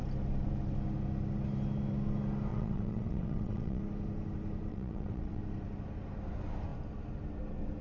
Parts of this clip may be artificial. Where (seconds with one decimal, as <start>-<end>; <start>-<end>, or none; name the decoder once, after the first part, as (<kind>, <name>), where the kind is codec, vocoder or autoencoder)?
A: 2.5-3.8 (vocoder, WaveNeXt); 4.7-5.4